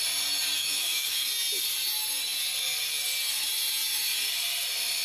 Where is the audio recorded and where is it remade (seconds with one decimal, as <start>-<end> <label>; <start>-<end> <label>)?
0.0-0.6 recorded; 0.6-1.3 remade; 1.3-5.0 recorded